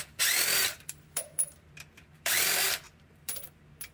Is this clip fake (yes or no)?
yes